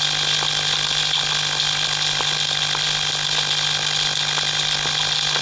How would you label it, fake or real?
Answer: real